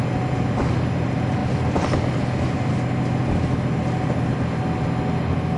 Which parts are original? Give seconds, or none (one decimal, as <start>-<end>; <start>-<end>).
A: 0.0-5.6